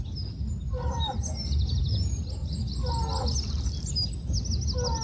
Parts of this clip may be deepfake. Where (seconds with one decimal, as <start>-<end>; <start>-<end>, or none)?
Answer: none